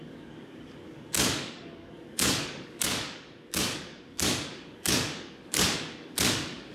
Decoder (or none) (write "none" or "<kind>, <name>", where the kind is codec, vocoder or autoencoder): codec, DAC